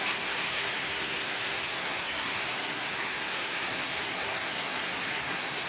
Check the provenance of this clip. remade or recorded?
remade